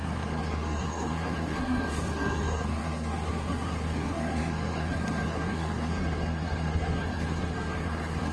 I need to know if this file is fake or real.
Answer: fake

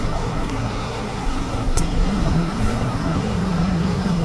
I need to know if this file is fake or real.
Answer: fake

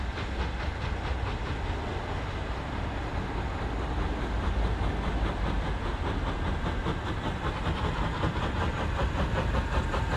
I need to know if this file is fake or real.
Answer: real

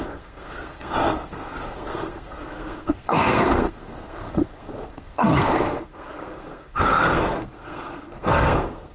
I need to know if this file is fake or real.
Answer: fake